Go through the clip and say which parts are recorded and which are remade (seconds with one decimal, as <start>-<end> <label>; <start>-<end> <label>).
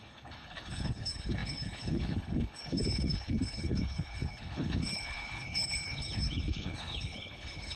0.0-7.8 remade